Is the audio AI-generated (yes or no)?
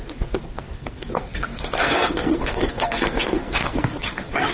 yes